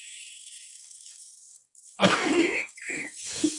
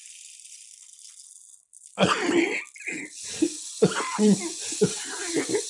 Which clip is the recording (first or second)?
second